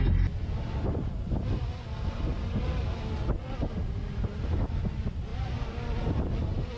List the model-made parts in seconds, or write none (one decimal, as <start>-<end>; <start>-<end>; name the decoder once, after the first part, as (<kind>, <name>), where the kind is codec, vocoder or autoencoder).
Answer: none